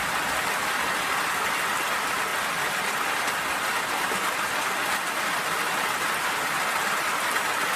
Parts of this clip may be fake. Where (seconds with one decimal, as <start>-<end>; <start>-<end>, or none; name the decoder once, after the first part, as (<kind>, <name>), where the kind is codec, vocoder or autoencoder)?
none